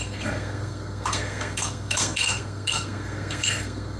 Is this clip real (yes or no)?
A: no